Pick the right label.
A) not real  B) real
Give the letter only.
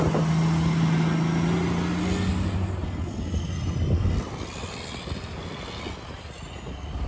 B